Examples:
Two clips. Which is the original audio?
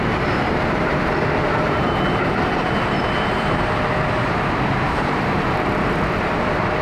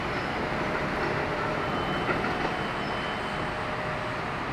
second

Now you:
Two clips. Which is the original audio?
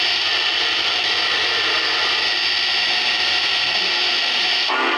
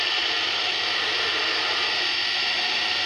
first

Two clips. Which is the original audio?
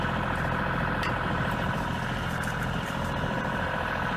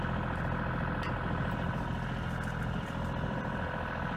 second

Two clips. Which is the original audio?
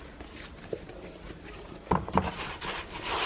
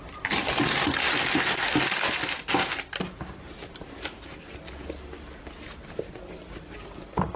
second